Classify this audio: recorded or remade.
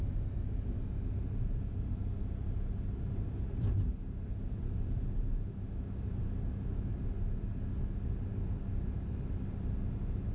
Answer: recorded